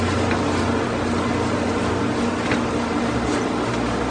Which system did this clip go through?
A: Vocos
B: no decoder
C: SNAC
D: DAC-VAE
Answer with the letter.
B